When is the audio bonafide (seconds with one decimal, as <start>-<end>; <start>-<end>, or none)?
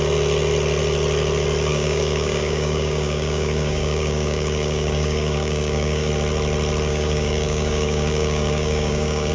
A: 0.0-1.7; 6.1-6.9